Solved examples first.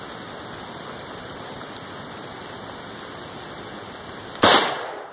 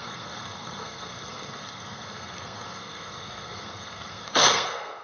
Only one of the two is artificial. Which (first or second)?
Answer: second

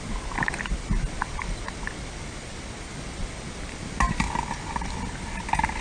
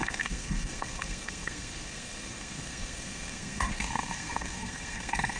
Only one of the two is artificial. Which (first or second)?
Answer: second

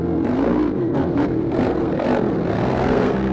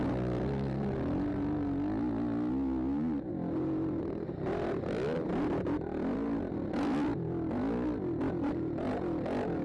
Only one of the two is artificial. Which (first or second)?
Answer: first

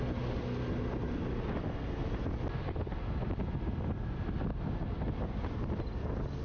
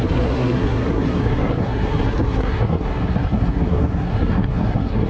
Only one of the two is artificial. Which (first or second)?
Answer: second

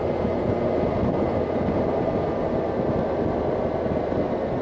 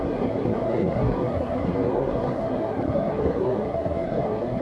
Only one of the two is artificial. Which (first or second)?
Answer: second